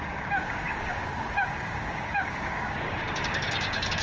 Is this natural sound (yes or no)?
no